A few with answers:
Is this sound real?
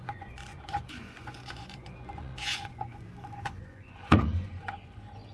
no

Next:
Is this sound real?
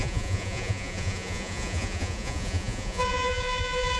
no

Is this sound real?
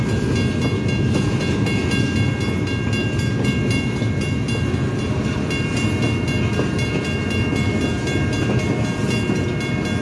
yes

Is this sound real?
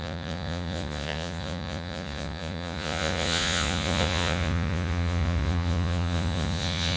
no